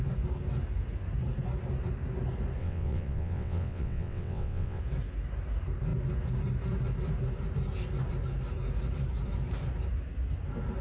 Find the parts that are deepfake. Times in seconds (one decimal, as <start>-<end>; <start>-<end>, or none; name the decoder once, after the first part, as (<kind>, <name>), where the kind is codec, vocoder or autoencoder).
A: 2.6-4.8 (vocoder, WaveNeXt)

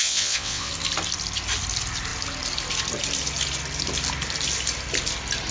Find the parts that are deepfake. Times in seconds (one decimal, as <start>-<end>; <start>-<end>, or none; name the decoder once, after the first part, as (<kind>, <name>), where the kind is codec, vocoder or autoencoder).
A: 0.0-0.7 (vocoder, WaveNeXt)

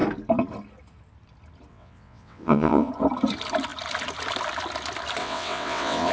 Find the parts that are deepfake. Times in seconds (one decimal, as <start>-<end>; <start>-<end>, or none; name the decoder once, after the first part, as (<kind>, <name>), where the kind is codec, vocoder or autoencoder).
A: 1.7-2.9 (vocoder, WaveNeXt); 5.2-6.1